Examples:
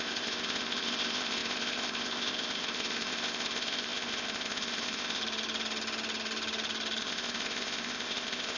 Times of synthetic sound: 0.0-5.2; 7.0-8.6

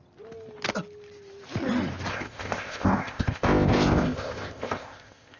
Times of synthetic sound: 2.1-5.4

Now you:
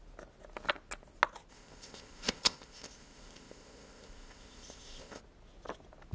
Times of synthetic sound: 1.5-5.2